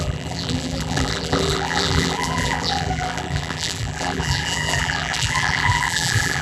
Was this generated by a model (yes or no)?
yes